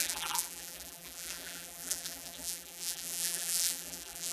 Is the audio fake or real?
fake